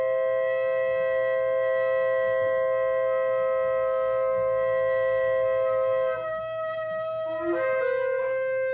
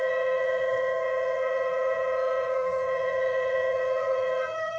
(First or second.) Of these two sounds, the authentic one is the first